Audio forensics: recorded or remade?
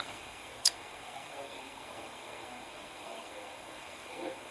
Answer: remade